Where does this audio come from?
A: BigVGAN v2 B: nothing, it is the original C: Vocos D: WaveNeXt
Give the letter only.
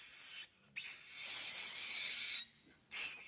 B